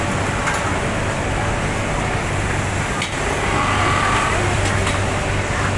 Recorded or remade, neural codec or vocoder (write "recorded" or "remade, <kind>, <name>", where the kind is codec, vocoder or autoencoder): recorded